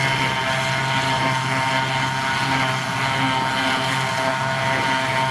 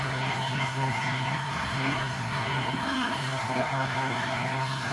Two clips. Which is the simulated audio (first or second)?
second